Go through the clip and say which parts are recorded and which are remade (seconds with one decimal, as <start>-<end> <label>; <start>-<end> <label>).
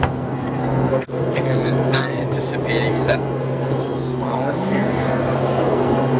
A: 0.0-2.2 remade; 2.2-2.9 recorded; 2.9-6.2 remade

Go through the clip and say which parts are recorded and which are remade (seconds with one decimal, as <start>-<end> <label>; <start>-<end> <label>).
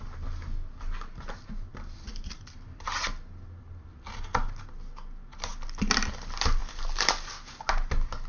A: 0.0-1.7 recorded; 1.7-3.1 remade; 3.1-6.6 recorded; 6.6-7.1 remade; 7.1-8.3 recorded